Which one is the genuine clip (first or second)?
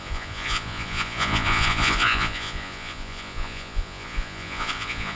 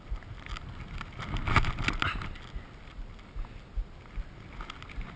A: second